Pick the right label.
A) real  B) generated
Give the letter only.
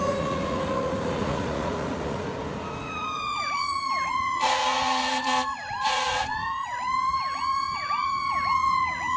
B